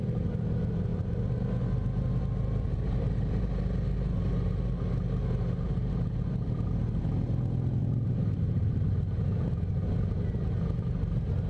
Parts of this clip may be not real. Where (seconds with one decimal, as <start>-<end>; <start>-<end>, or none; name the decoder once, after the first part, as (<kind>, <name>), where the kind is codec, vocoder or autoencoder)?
7.8-8.9 (vocoder, BigVGAN v2)